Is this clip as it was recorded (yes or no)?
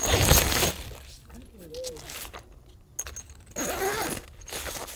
yes